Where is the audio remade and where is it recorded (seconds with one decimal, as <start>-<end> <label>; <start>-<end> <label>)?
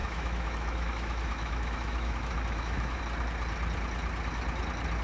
0.0-3.0 remade; 3.0-5.0 recorded